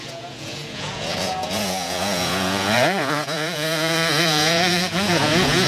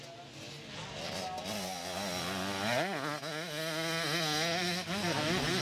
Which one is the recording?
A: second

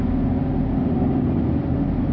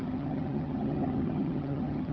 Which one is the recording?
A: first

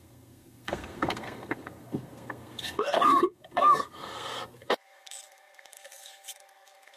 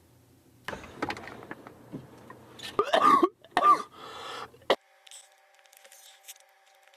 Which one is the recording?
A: second